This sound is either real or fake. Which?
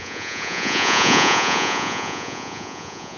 fake